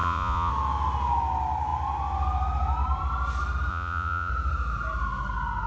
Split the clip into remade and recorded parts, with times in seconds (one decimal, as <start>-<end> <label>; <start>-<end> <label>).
0.0-0.5 remade; 0.5-3.7 recorded; 3.7-4.3 remade; 4.3-5.7 recorded